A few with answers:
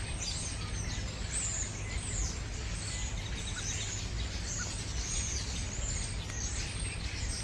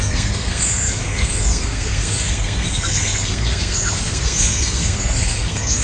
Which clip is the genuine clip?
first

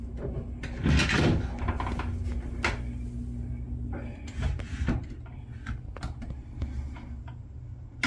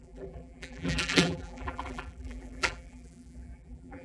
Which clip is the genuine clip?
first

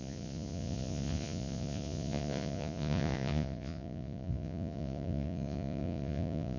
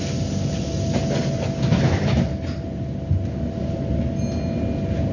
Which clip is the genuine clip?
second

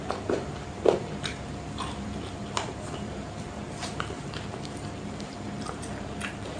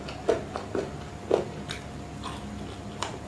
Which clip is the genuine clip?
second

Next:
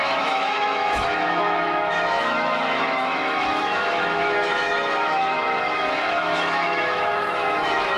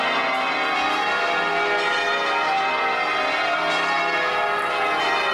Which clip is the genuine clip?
second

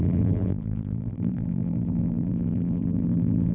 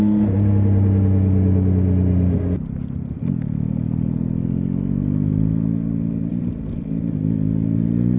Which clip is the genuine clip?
second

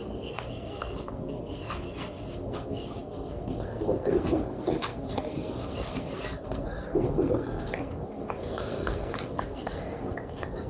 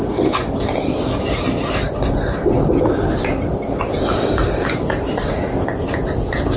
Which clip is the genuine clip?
second